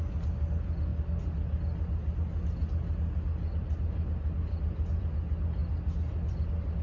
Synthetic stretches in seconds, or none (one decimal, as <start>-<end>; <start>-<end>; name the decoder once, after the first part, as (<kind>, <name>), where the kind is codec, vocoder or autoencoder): none